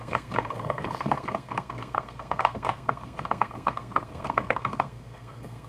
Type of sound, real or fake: fake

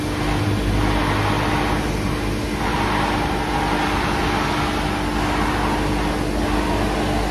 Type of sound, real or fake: real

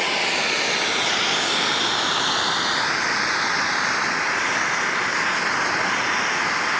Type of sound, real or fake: real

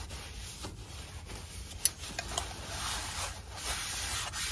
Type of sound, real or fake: real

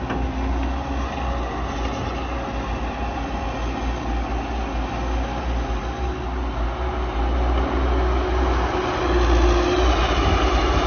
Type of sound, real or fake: real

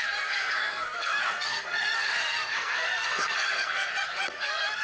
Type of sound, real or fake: fake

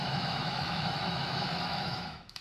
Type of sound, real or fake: fake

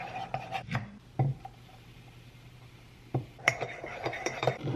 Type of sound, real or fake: fake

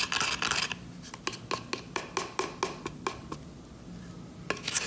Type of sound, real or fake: real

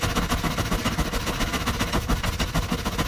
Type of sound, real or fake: real